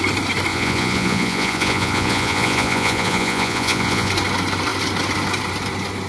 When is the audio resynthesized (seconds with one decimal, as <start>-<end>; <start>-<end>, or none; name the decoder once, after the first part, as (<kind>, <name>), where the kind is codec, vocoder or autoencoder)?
0.5-4.1 (vocoder, Vocos)